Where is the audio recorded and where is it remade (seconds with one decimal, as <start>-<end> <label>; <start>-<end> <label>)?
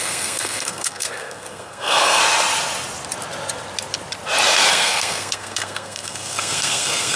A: 0.0-2.2 remade; 2.2-4.7 recorded; 4.7-7.2 remade